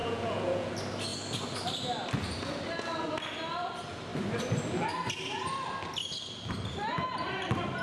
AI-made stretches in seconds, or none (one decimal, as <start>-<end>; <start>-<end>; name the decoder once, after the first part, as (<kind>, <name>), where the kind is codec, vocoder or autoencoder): 0.0-0.7 (vocoder, Vocos)